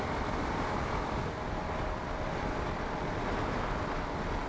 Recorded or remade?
recorded